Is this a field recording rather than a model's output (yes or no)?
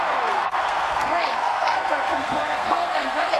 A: no